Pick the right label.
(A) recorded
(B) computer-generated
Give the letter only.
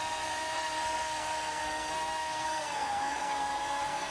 B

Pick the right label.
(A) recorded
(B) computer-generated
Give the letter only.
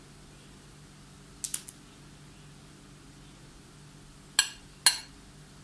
A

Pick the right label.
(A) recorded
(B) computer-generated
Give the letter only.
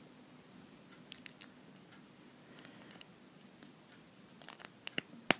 A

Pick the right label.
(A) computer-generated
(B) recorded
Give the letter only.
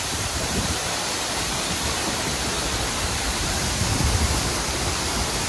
A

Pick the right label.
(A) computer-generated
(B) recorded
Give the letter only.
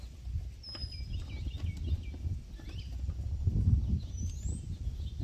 B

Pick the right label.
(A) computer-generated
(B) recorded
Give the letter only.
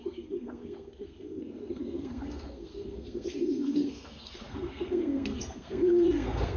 A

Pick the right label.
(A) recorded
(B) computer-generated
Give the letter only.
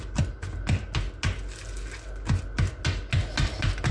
A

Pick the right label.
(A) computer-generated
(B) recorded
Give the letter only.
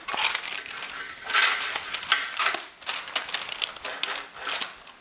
B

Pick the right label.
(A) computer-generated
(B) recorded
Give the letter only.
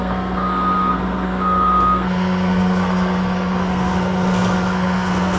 A